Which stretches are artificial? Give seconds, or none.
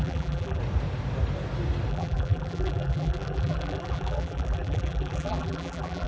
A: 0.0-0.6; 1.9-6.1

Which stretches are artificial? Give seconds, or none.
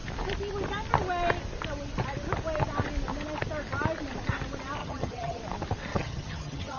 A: 4.8-5.4; 5.9-6.8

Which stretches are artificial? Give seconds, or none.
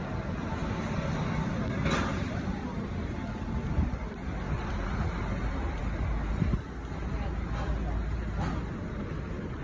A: none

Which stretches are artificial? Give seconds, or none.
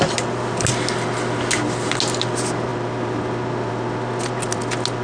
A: none